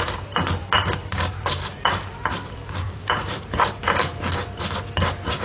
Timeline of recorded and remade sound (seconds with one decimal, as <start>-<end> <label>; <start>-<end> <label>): 0.0-0.6 recorded; 0.6-3.8 remade; 3.8-5.4 recorded